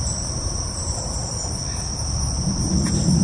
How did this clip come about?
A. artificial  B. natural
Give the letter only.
A